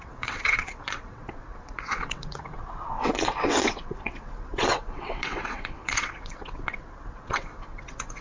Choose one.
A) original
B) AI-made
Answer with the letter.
B